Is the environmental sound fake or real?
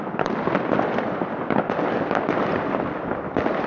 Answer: real